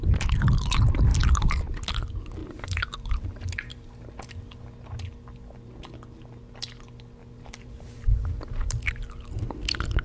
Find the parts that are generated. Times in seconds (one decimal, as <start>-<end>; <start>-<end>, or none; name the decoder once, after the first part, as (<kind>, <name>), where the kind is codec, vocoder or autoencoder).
1.1-1.6 (vocoder, BigVGAN v2); 2.4-4.1; 7.2-8.9

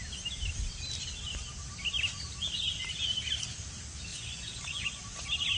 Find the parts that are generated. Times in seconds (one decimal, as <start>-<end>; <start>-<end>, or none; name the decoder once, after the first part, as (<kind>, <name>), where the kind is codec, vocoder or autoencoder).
4.1-5.0 (vocoder, Vocos)

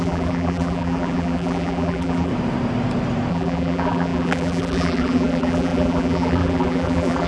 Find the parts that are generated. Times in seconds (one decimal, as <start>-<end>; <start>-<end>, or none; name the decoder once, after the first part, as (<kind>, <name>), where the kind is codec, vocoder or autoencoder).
0.0-2.3 (vocoder, BigVGAN v2); 3.3-7.3

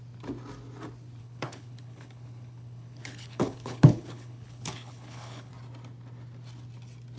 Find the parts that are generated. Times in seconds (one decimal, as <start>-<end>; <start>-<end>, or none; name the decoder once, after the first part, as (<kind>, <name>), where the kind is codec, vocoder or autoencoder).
1.2-5.5 (codec, HILCodec)

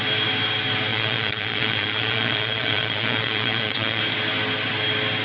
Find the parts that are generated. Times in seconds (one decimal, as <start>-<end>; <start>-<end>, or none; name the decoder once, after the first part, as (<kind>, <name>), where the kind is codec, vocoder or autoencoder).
0.9-4.0 (vocoder, Vocos)